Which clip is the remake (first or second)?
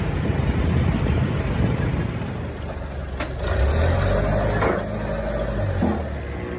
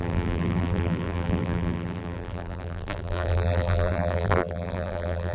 second